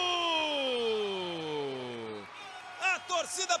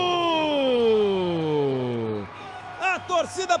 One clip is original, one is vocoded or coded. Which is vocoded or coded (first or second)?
second